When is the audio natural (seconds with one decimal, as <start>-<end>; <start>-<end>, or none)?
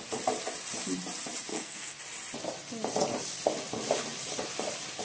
0.0-1.5; 2.0-5.0